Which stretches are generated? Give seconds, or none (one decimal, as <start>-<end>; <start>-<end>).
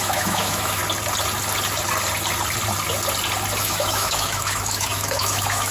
0.0-0.8; 3.6-5.7